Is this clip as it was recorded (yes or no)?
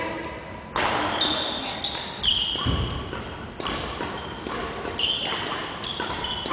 yes